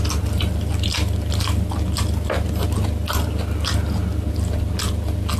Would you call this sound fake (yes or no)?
no